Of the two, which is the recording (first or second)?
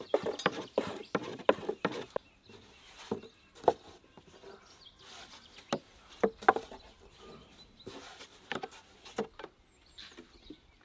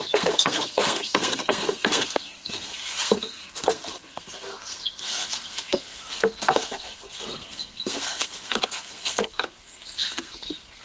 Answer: first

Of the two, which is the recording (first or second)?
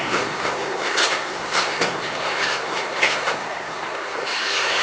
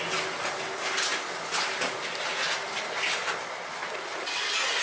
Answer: second